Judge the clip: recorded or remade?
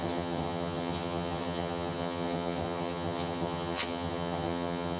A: remade